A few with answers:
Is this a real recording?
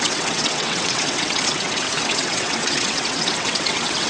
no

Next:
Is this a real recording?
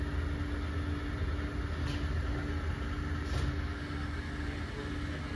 yes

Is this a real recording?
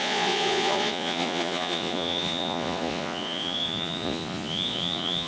no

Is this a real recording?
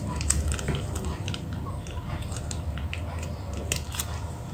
yes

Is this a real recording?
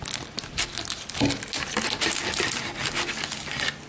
yes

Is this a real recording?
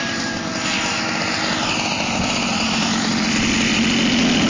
yes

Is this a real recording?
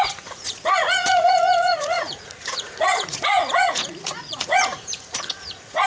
no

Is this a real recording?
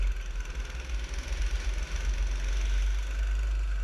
yes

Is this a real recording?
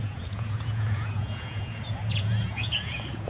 no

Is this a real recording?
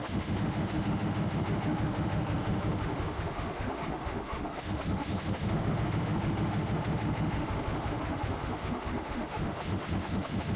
no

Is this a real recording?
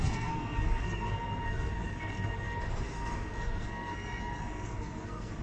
no